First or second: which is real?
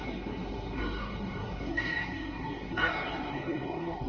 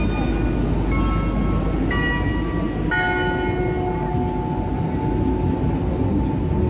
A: second